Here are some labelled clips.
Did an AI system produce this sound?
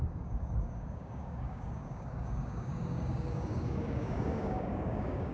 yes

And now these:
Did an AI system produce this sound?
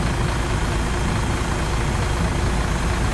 no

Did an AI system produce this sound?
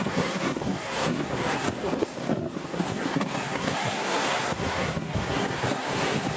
yes